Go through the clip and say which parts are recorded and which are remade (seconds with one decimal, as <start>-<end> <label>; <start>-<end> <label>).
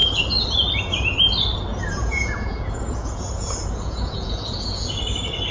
0.0-1.7 recorded; 1.7-5.0 remade; 5.0-5.5 recorded